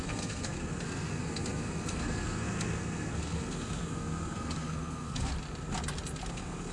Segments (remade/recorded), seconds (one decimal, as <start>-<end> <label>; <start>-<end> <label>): 0.0-5.3 remade; 5.3-6.3 recorded; 6.3-6.7 remade